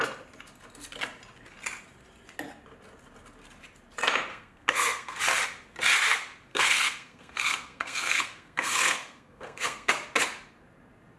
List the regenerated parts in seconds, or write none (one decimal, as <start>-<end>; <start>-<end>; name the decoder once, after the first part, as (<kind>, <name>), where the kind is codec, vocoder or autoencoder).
4.3-5.2 (codec, SNAC); 6.5-9.9